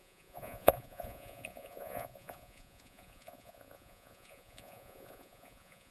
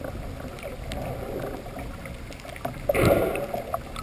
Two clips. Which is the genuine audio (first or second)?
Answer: second